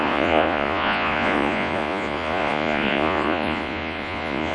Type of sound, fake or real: fake